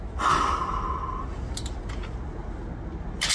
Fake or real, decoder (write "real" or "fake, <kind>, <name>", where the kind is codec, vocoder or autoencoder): real